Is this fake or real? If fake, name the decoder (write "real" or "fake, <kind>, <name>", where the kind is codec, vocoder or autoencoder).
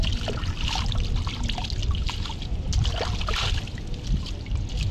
real